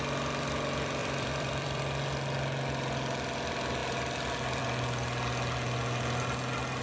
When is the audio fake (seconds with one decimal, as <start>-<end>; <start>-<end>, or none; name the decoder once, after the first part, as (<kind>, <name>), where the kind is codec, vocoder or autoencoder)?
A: 1.0-1.8 (vocoder, BigVGAN v2); 3.8-4.6

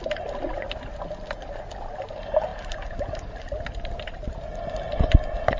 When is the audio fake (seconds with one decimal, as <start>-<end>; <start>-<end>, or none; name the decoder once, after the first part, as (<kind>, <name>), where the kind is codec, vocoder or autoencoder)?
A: none

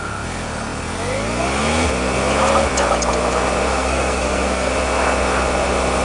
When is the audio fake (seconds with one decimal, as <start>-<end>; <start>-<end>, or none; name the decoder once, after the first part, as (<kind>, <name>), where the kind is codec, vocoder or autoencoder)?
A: 3.7-4.7 (codec, SNAC)

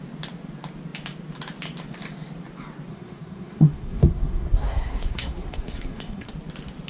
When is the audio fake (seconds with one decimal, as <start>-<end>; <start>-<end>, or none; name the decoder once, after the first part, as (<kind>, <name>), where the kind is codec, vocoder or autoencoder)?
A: 2.9-6.3 (codec, SNAC)